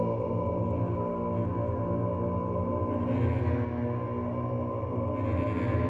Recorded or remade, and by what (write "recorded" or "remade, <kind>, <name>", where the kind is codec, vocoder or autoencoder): recorded